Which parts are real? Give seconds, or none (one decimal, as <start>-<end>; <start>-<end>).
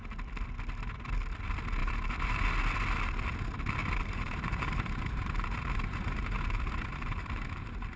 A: 0.0-1.8; 2.3-3.8